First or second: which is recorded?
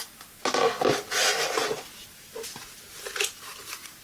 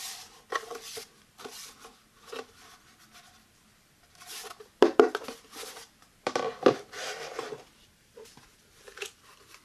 first